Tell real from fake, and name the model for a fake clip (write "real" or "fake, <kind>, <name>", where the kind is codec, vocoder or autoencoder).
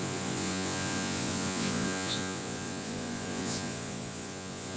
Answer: fake, vocoder, Vocos